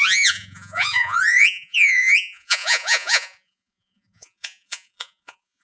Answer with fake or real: fake